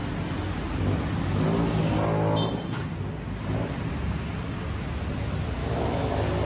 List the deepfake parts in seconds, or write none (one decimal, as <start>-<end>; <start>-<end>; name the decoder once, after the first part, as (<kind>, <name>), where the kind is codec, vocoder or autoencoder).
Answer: 5.6-6.1 (autoencoder, DAC-VAE)